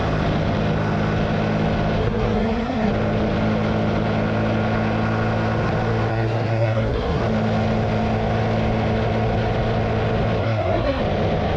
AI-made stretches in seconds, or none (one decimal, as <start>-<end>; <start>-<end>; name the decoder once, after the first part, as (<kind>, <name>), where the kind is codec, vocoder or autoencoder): 2.0-2.9 (codec, SNAC); 6.1-7.2; 10.4-11.0